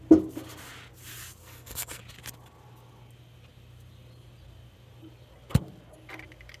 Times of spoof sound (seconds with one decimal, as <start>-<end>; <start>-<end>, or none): 1.4-2.0

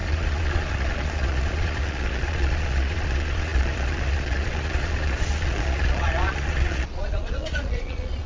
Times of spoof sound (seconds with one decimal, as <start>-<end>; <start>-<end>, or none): 0.0-8.3

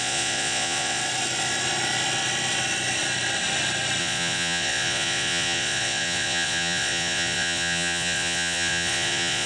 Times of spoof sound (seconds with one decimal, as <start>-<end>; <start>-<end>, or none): 0.0-1.0; 4.0-9.5

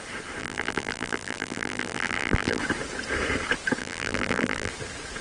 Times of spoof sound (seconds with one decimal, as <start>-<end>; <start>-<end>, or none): 0.4-2.6; 3.8-4.7

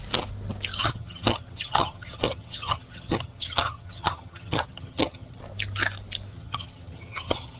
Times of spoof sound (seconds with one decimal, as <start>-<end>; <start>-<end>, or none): 0.8-5.4; 6.3-7.6

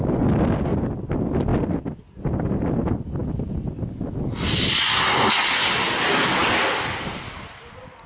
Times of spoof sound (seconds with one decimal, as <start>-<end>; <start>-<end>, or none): none

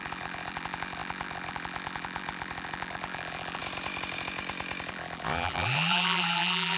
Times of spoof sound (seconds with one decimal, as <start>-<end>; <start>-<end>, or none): 0.0-3.6; 4.9-6.8

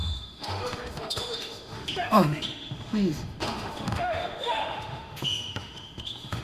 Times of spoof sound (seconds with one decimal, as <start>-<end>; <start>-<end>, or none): 0.0-6.4